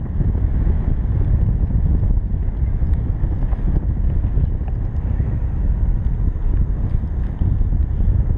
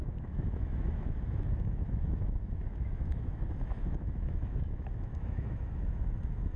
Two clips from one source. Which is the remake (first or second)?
second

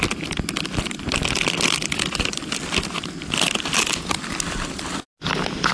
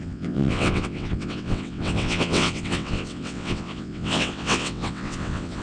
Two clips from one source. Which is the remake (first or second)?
second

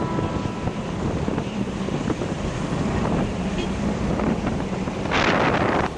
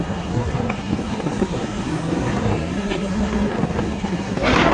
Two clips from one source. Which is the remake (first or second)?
second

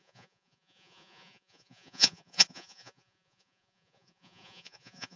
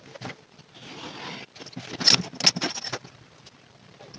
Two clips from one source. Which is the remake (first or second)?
first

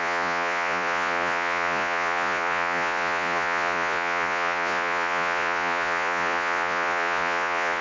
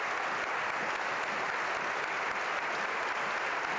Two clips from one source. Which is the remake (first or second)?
first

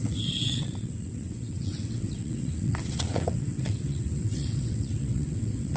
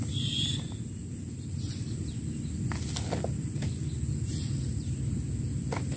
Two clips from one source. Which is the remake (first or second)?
first